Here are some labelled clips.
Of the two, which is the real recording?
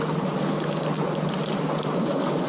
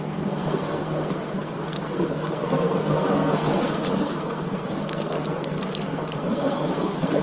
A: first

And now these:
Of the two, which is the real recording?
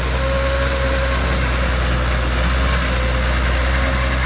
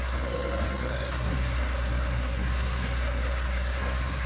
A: first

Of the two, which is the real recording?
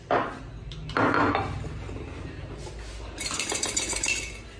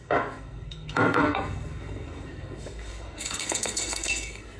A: first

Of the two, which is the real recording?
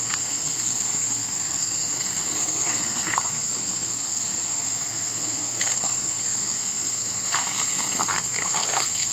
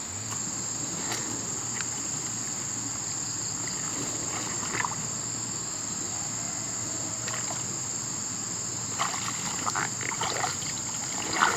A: second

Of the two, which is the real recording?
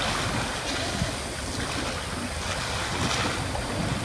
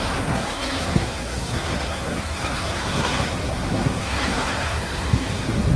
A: first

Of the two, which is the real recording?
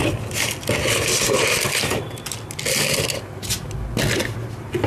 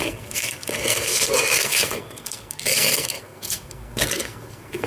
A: first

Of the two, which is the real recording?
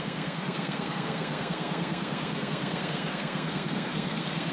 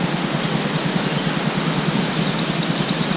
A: second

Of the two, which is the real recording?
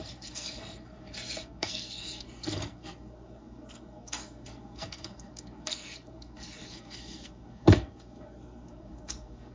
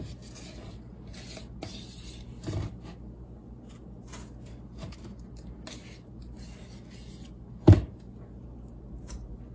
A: second